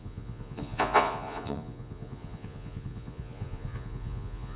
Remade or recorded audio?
remade